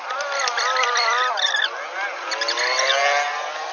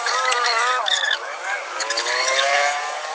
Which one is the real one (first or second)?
first